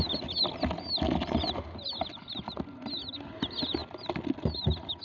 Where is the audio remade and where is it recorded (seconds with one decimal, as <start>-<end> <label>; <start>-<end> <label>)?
0.0-5.0 recorded